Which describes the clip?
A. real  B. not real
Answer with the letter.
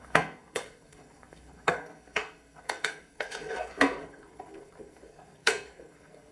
B